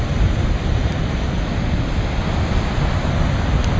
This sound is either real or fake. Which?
real